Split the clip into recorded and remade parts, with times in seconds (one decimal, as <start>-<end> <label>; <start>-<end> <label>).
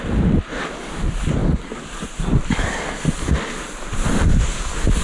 0.0-5.0 recorded